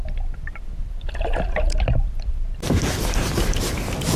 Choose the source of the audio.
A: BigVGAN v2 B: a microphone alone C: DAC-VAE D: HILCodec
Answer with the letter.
B